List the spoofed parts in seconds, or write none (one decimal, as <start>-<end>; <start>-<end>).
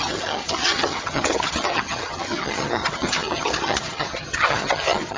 0.0-5.2